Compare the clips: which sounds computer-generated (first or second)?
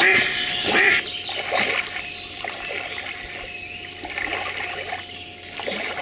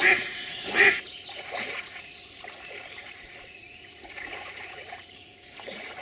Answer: second